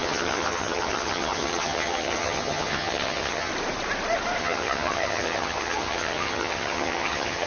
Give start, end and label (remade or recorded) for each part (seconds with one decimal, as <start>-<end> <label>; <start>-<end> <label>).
0.0-3.5 remade; 3.5-4.4 recorded; 4.4-7.5 remade